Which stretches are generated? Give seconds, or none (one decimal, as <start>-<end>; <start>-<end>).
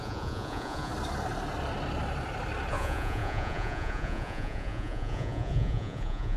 0.0-0.9; 2.7-6.4